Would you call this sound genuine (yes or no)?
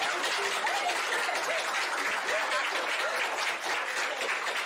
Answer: yes